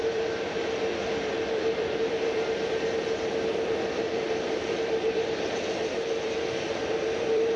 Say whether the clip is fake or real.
fake